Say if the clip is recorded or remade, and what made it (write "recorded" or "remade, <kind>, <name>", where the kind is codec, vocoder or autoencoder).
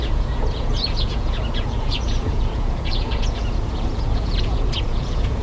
remade, vocoder, Vocos